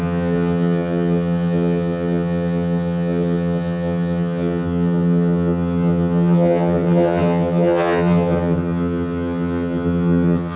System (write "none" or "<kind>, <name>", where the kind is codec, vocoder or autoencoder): vocoder, HiFi-GAN